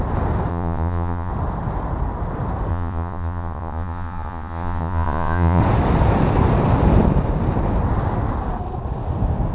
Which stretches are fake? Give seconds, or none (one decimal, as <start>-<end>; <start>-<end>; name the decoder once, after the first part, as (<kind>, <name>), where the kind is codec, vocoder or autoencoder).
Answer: 0.5-1.3 (vocoder, Vocos); 2.7-5.6